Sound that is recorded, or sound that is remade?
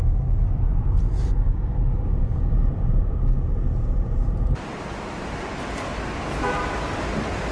recorded